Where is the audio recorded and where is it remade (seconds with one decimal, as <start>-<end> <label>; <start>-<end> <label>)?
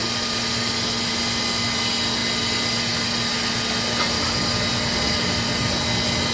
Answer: 0.0-6.3 recorded